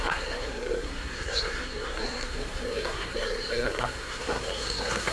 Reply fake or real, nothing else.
fake